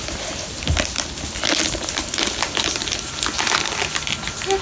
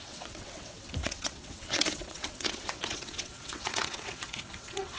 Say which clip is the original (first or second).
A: first